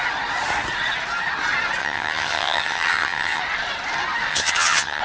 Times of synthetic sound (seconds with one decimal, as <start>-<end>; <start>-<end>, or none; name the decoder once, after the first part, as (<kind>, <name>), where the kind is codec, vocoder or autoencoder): 1.8-3.4 (vocoder, HiFi-GAN); 4.3-5.0